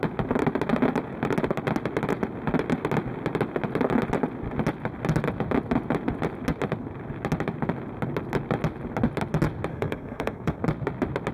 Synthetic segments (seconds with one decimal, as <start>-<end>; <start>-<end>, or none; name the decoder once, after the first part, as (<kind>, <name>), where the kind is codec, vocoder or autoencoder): 9.7-10.6 (codec, SNAC)